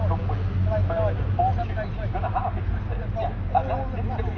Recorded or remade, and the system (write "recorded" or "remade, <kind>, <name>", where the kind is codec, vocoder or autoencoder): recorded